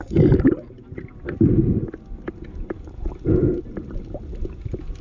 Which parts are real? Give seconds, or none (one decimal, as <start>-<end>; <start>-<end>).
0.0-5.0